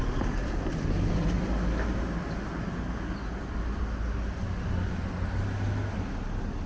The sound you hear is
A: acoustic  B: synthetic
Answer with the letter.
A